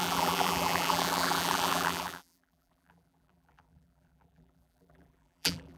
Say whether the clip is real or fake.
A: fake